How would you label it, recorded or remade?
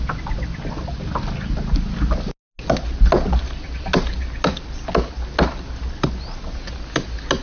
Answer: recorded